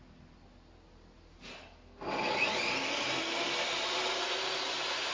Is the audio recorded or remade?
recorded